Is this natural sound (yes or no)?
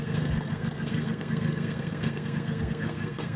no